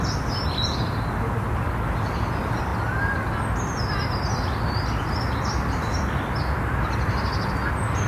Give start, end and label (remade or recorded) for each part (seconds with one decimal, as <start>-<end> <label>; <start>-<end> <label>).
0.0-8.1 recorded